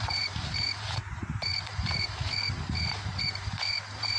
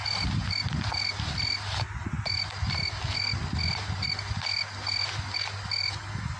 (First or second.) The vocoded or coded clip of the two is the first